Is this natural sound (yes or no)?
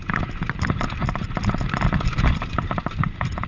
yes